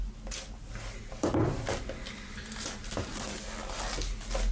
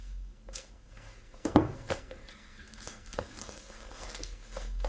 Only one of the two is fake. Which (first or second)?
second